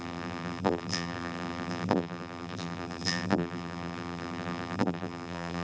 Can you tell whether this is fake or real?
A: fake